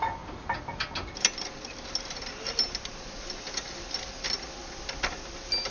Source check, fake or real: real